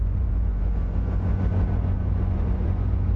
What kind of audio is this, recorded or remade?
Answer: remade